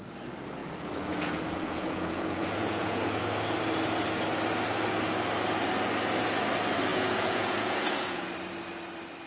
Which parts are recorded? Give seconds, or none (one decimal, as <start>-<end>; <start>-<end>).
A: 0.0-0.6; 3.2-6.9; 8.3-9.3